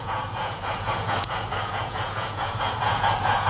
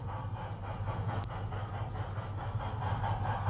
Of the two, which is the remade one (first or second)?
first